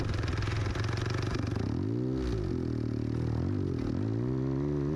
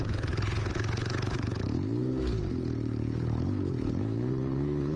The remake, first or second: second